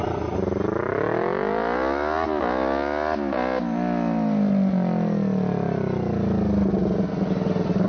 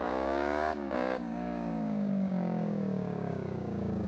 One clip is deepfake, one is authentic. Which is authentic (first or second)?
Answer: first